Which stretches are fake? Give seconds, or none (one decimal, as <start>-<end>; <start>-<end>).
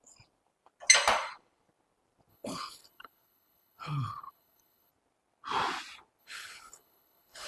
2.3-4.9; 6.2-7.5